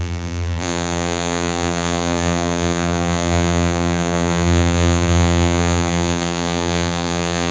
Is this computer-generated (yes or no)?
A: yes